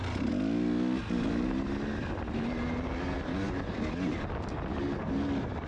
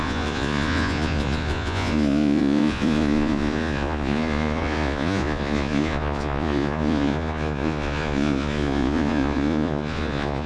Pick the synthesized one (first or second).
second